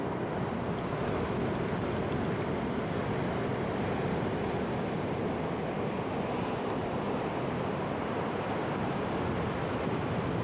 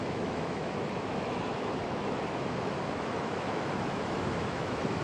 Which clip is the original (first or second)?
first